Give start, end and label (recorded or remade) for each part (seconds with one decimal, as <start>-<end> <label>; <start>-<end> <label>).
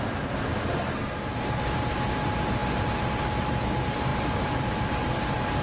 0.0-4.1 recorded; 4.1-5.6 remade